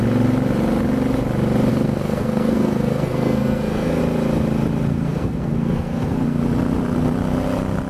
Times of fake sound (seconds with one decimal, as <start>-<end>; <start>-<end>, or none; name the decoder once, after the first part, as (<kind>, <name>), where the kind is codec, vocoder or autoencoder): 1.7-4.0 (codec, SNAC); 4.9-6.4